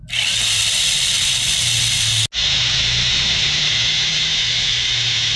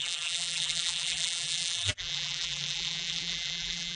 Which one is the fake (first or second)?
second